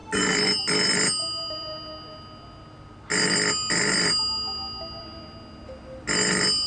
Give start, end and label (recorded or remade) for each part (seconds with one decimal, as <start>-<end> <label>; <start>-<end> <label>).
0.0-6.7 recorded